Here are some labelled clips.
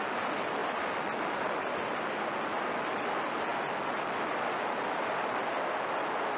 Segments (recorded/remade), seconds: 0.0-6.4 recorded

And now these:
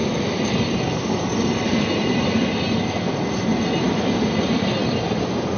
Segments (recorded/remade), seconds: 0.0-5.6 recorded